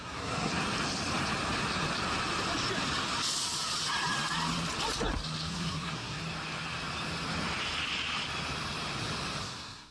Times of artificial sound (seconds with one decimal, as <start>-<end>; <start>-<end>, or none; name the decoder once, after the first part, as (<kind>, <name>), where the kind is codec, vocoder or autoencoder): 0.0-0.5 (codec, SNAC); 5.5-6.2; 9.4-9.9